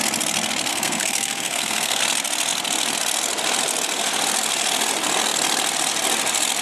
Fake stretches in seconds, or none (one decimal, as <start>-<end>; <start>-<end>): 0.7-2.0